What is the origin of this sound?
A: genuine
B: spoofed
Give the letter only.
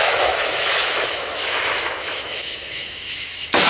B